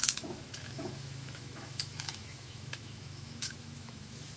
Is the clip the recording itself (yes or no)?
no